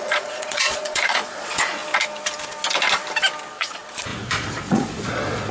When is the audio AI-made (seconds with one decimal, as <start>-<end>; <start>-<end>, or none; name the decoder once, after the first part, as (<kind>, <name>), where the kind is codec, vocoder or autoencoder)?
0.0-1.8 (vocoder, Vocos); 3.6-5.5